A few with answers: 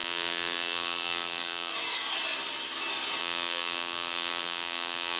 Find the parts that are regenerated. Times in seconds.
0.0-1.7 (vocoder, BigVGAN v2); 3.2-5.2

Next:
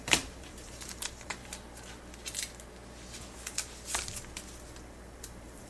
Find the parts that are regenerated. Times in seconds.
0.0-1.4 (vocoder, BigVGAN v2); 4.8-5.7

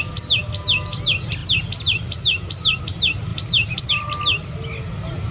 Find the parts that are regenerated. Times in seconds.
3.3-3.9 (vocoder, BigVGAN v2)

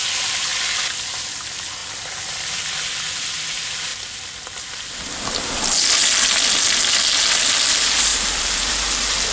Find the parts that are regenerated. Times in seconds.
8.1-8.7 (vocoder, BigVGAN v2)